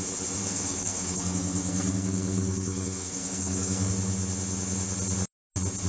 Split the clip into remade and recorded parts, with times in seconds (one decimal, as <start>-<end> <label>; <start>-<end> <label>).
0.0-0.4 recorded; 0.4-3.9 remade; 3.9-5.9 recorded